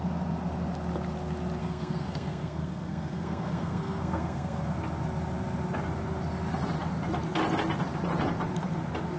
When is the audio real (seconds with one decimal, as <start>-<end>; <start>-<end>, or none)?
0.0-1.6; 4.6-9.2